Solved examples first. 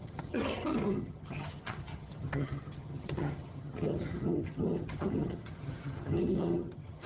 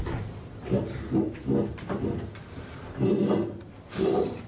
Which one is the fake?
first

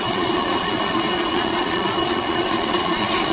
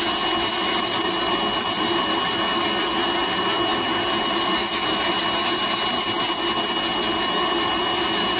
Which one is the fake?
first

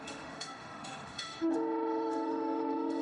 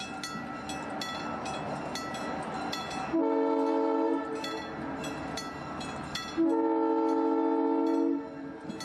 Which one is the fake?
first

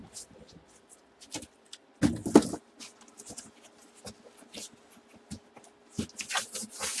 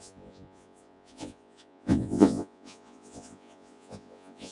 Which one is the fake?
second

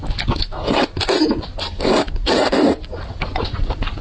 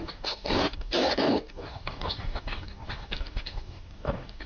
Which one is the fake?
second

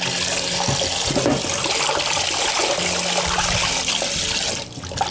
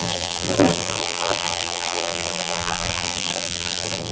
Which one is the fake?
second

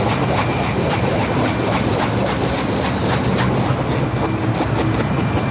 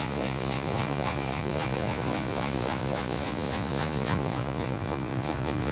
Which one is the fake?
second